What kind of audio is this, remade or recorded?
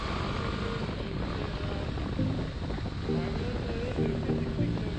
recorded